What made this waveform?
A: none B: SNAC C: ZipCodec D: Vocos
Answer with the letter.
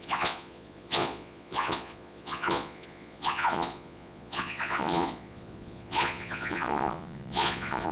D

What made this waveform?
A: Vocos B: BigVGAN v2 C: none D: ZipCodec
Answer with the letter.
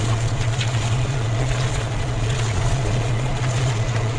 A